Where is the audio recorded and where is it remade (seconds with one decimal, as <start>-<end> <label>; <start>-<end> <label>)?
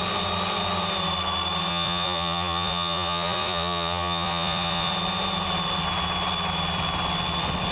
0.0-1.7 recorded; 1.7-4.9 remade; 4.9-7.7 recorded